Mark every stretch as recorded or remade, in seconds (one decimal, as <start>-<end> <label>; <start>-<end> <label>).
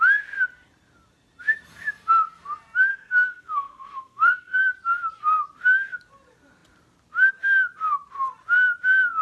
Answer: 0.0-2.9 recorded; 2.9-4.6 remade; 4.6-9.2 recorded